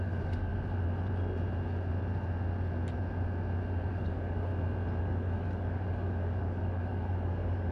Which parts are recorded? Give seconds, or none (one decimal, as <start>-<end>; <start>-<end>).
0.5-3.9; 4.5-5.0